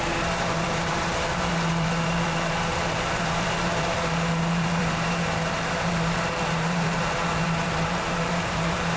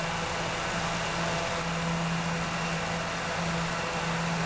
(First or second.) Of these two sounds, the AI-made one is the first